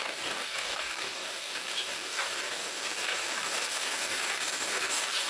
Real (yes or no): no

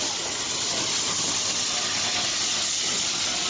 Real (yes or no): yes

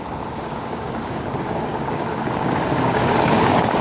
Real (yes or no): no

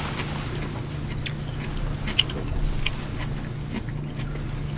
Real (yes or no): yes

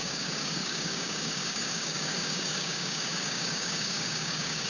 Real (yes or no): no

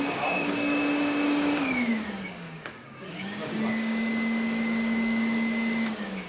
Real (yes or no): no